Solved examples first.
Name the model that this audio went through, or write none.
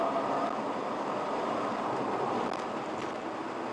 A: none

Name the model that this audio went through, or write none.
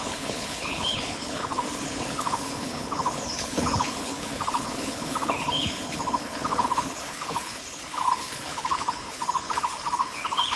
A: codec, HILCodec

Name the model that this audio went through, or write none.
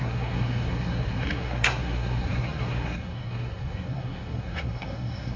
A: codec, SNAC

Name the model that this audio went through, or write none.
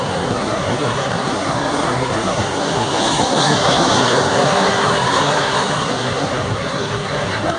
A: codec, SNAC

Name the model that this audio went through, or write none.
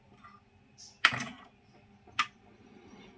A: none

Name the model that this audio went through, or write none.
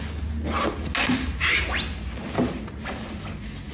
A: none